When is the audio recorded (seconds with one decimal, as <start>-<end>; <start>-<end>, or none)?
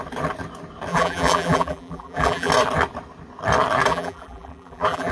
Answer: 0.0-0.9; 2.5-3.9